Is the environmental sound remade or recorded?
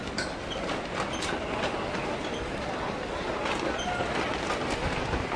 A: recorded